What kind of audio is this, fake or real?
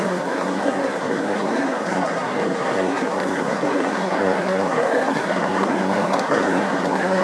fake